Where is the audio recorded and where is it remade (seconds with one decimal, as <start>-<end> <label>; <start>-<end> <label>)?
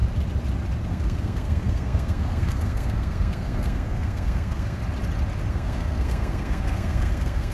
0.0-0.9 recorded; 0.9-4.8 remade; 4.8-5.5 recorded; 5.5-7.5 remade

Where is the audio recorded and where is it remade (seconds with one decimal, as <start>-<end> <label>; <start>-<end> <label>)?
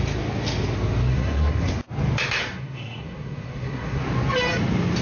0.0-1.1 recorded; 1.1-1.7 remade; 1.7-2.4 recorded; 2.4-4.0 remade; 4.0-5.0 recorded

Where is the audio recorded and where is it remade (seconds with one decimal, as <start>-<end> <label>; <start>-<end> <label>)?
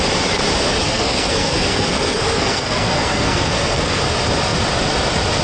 0.0-0.8 recorded; 0.8-4.0 remade; 4.0-5.4 recorded